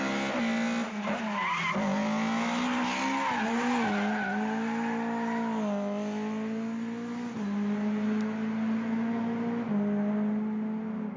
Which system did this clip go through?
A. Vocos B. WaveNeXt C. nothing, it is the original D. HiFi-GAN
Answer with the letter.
C